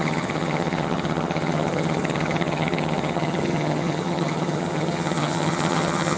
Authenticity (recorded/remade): remade